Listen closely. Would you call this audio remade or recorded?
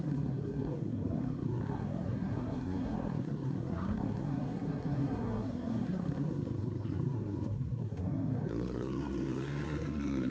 remade